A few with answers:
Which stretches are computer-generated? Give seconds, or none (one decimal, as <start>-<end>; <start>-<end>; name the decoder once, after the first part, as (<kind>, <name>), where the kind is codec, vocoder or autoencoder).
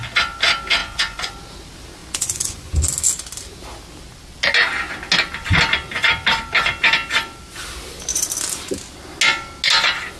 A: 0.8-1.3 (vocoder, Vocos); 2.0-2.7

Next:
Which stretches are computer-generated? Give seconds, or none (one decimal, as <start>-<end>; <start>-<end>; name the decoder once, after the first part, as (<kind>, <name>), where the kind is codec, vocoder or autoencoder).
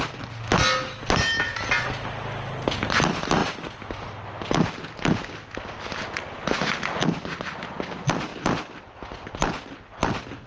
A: none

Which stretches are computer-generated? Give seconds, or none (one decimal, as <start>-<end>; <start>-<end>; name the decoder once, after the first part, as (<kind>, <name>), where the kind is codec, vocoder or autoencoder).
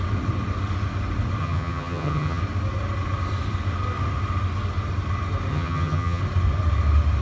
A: 1.4-2.4 (vocoder, HiFi-GAN); 5.5-6.2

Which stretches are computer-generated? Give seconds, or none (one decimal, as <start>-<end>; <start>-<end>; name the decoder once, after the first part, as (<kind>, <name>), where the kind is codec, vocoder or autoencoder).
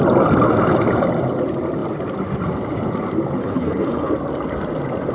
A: 3.4-4.1 (codec, HILCodec)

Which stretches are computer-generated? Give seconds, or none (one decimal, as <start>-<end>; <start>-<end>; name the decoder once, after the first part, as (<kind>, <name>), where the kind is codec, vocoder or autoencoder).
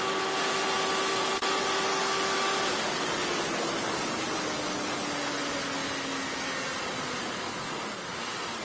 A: none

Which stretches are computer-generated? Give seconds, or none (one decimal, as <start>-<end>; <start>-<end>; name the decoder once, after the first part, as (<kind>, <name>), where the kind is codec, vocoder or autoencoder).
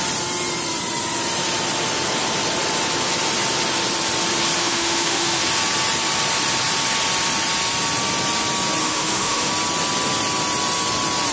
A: 4.6-5.4 (autoencoder, DAC-VAE); 8.8-9.5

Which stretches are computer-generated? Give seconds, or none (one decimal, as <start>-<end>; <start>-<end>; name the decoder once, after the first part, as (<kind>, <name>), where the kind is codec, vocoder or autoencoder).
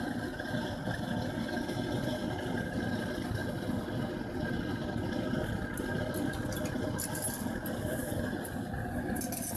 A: none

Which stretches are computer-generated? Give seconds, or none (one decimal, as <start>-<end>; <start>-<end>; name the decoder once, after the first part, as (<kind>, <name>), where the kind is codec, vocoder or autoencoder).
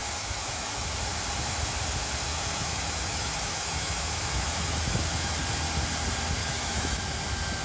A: 0.0-1.0 (autoencoder, DAC-VAE); 2.3-5.3; 6.4-7.0